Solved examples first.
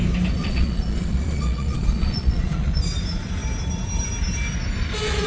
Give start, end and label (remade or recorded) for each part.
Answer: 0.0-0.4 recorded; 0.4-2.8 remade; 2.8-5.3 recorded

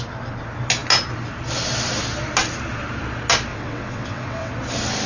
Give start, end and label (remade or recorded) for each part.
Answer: 0.0-3.5 recorded; 3.5-4.5 remade; 4.5-5.1 recorded

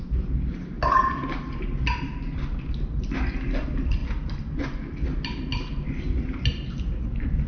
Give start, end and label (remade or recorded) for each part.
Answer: 0.0-7.5 recorded

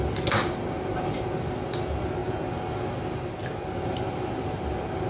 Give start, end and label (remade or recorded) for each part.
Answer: 0.0-5.1 recorded

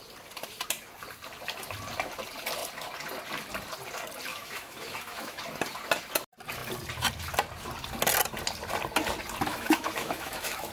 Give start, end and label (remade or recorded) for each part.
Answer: 0.0-4.3 recorded; 4.3-5.4 remade; 5.4-9.5 recorded; 9.5-10.7 remade

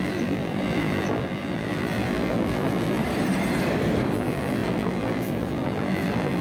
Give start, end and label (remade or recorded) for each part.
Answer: 0.0-3.0 remade; 3.0-4.1 recorded; 4.1-6.4 remade